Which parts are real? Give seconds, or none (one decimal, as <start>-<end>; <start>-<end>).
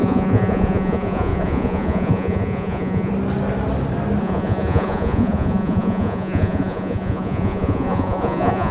3.1-4.2